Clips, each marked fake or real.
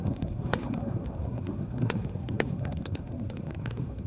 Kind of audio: fake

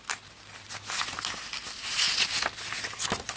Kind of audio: real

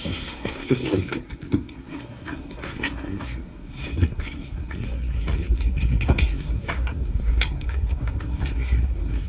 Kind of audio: fake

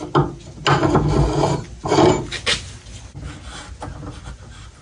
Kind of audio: real